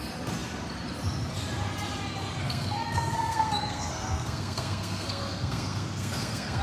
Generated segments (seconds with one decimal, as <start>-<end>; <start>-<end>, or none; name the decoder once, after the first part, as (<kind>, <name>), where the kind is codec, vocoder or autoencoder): 2.4-6.6 (codec, SNAC)